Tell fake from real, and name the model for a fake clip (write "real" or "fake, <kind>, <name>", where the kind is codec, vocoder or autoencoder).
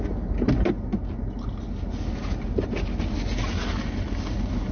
real